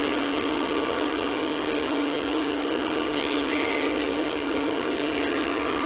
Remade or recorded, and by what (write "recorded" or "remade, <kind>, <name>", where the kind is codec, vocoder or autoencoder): remade, vocoder, HiFi-GAN